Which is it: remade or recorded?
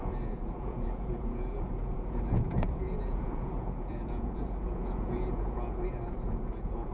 remade